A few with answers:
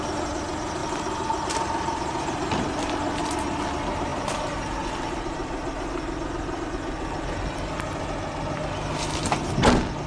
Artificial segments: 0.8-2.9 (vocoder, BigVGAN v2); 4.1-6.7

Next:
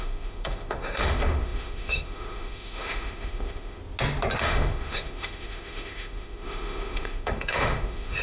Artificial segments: 0.0-3.8 (autoencoder, DAC-VAE); 4.4-8.2

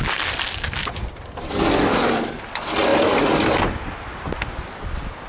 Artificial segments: none